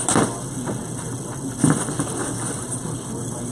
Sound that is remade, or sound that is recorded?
recorded